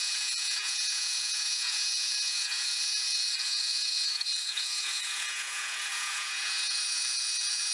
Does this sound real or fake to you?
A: fake